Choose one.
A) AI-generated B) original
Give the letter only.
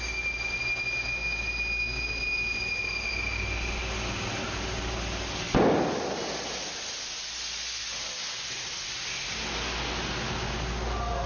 B